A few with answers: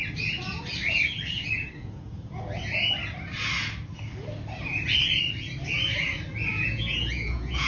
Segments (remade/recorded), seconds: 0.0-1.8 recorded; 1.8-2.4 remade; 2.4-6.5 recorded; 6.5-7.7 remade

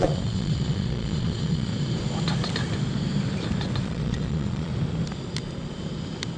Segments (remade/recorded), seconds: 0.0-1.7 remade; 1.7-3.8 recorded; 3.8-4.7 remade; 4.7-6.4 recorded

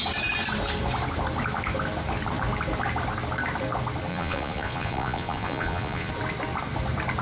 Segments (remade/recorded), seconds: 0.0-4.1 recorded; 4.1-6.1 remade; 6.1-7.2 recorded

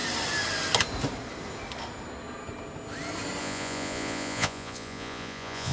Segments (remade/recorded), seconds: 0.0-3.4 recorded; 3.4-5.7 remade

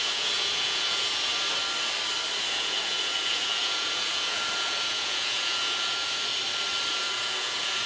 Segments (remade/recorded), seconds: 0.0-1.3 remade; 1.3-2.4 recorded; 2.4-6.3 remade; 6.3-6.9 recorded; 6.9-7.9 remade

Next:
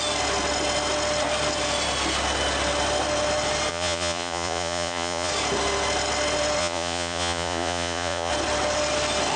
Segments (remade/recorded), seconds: 0.0-3.7 recorded; 3.7-5.3 remade; 5.3-6.6 recorded; 6.6-8.3 remade; 8.3-9.4 recorded

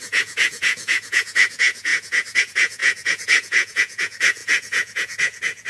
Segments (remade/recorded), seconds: 0.0-5.7 remade

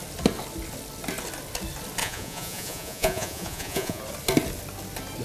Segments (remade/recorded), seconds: 0.0-2.0 recorded; 2.0-4.0 remade; 4.0-5.2 recorded